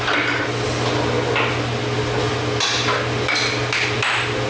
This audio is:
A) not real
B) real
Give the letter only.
B